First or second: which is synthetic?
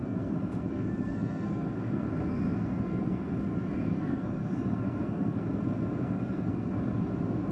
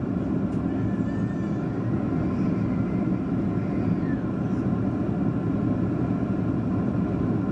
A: first